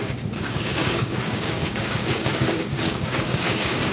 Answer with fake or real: fake